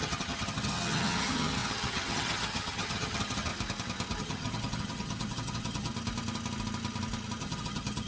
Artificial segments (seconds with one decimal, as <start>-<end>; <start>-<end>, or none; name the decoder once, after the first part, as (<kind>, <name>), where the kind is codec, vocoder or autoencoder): 0.0-3.5 (vocoder, HiFi-GAN); 4.2-5.9; 7.4-8.1